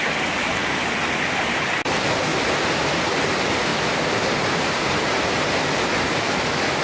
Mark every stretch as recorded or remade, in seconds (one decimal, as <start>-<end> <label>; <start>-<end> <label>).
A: 0.0-2.3 recorded; 2.3-3.0 remade; 3.0-3.7 recorded; 3.7-6.0 remade; 6.0-6.8 recorded